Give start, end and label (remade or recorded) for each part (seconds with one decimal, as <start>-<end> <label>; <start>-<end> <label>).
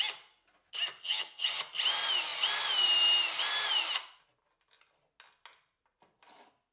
0.0-1.0 recorded; 1.0-1.6 remade; 1.6-6.7 recorded